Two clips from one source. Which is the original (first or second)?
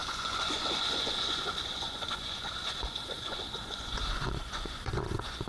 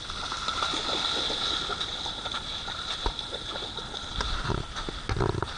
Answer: second